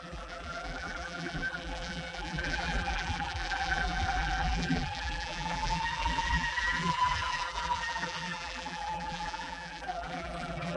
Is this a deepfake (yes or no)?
yes